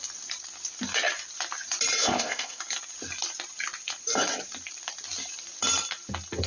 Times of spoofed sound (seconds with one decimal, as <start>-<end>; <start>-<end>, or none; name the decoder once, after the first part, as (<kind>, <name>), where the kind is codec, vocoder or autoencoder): 2.0-2.6 (codec, ZipCodec)